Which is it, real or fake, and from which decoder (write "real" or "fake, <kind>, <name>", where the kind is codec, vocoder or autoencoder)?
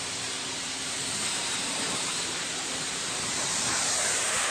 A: fake, vocoder, BigVGAN v2